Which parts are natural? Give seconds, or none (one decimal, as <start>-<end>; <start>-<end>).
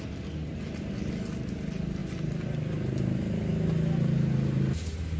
0.0-5.2